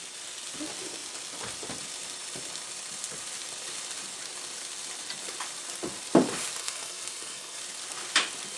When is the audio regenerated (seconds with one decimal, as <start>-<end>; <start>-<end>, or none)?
6.6-7.6